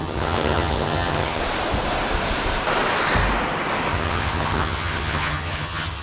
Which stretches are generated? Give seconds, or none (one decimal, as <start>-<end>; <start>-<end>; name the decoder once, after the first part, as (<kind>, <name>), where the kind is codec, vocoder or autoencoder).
0.0-1.4 (vocoder, HiFi-GAN); 3.9-6.0